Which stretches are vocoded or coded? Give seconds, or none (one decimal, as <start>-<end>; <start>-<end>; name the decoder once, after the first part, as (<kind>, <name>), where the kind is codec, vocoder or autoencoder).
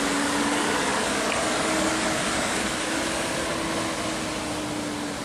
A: 0.0-3.5 (codec, DAC)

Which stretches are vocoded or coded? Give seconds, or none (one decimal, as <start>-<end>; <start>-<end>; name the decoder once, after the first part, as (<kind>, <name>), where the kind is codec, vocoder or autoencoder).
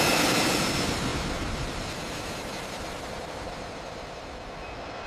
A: 1.1-4.2 (vocoder, BigVGAN v2)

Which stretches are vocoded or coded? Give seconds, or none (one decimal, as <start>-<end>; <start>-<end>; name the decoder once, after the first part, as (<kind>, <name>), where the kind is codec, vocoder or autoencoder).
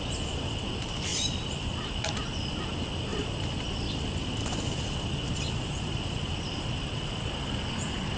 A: 1.1-2.0 (vocoder, BigVGAN v2); 3.1-8.2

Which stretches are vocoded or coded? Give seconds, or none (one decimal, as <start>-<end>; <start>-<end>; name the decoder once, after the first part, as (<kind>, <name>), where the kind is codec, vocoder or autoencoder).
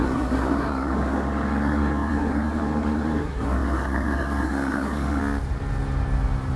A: 0.0-5.2 (codec, SNAC)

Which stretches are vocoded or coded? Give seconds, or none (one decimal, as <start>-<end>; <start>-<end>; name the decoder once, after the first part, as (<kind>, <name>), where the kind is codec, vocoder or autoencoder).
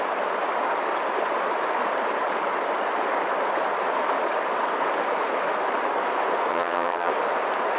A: 6.5-7.1 (vocoder, HiFi-GAN)